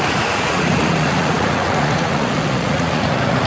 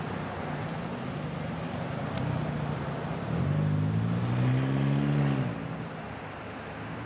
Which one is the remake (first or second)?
first